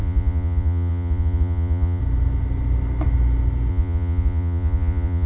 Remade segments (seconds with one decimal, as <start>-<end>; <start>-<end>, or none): 0.0-2.0; 3.7-5.3